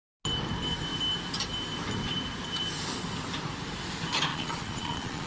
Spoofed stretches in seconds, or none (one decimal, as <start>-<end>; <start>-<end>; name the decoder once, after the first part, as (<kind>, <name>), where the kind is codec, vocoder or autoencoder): 4.3-5.3 (vocoder, Vocos)